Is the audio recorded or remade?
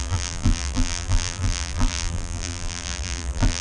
remade